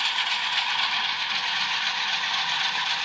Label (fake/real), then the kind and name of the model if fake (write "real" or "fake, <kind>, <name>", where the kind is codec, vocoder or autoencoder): real